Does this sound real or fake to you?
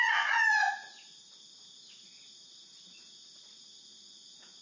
fake